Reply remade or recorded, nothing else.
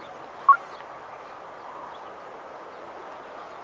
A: recorded